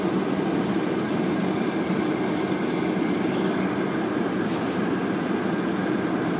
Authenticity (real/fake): real